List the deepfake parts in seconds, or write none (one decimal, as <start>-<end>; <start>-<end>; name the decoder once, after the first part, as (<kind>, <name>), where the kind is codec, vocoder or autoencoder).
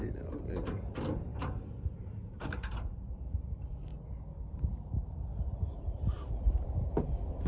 0.0-3.9 (vocoder, BigVGAN v2); 4.7-7.5